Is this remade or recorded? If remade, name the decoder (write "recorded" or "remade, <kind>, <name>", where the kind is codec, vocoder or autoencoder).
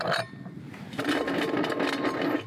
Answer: recorded